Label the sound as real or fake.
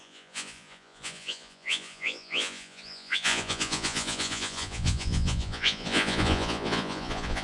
fake